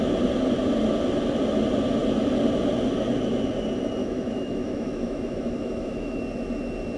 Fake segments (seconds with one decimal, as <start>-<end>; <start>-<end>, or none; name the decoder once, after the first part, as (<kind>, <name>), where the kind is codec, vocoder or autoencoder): 4.0-6.2 (autoencoder, DAC-VAE)